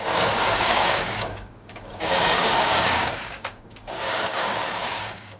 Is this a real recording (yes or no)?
no